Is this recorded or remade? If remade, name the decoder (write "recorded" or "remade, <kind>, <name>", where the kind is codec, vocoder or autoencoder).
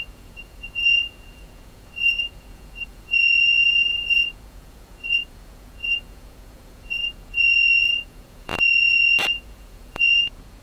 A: remade, vocoder, Vocos